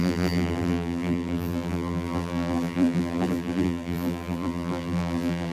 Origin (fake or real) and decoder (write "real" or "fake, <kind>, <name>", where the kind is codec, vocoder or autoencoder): fake, vocoder, BigVGAN v2